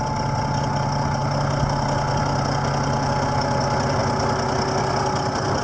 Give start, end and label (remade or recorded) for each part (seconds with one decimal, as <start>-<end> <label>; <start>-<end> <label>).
0.0-5.6 recorded